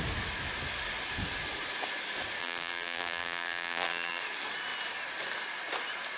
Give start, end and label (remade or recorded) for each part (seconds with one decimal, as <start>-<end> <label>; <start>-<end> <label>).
0.0-2.4 recorded; 2.4-4.2 remade; 4.2-6.2 recorded